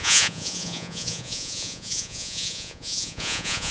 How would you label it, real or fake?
fake